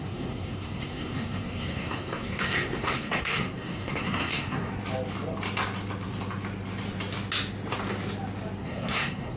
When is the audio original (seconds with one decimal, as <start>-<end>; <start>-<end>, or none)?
4.7-8.6

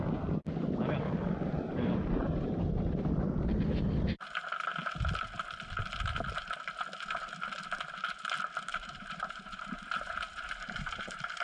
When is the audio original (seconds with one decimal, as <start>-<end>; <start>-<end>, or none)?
0.0-8.7

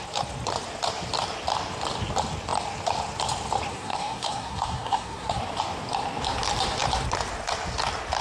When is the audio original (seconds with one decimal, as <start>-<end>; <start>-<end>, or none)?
0.0-3.7; 5.4-8.2

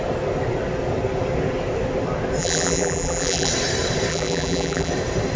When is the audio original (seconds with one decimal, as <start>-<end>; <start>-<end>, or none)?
0.0-2.4; 3.5-4.1; 4.9-5.4

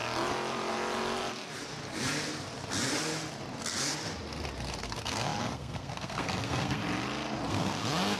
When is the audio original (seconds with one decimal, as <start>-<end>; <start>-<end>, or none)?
0.0-4.8; 6.8-7.5

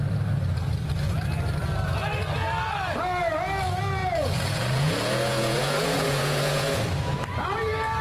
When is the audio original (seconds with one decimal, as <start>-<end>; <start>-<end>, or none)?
0.0-4.0; 6.8-8.0